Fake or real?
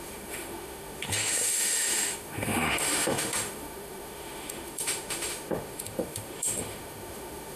fake